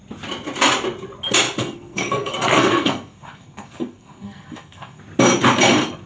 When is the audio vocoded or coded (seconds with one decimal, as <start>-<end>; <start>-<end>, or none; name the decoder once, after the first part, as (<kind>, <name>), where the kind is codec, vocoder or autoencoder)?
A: 1.6-5.0 (codec, SNAC)